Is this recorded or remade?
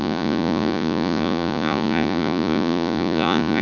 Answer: remade